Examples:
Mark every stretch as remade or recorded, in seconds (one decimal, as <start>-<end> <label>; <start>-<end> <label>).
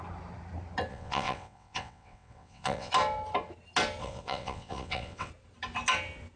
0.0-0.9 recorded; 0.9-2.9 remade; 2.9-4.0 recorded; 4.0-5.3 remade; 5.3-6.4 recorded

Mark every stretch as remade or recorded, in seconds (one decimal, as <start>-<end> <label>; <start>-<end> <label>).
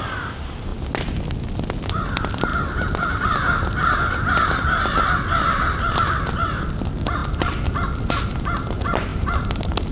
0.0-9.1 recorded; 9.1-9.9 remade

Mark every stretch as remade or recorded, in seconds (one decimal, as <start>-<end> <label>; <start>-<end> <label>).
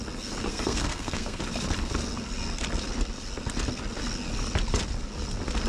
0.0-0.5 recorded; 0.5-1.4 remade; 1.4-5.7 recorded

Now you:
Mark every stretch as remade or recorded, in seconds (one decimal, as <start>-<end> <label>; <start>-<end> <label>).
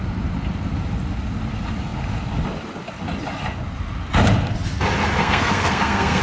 0.0-5.2 recorded; 5.2-6.2 remade